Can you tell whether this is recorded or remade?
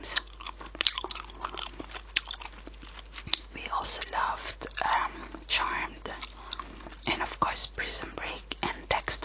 recorded